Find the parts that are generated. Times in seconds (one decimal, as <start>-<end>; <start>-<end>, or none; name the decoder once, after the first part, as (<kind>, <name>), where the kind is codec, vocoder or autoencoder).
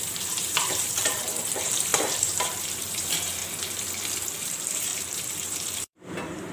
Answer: 0.0-3.4 (vocoder, BigVGAN v2); 4.4-6.5